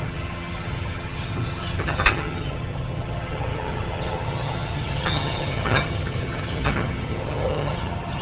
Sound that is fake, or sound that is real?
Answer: fake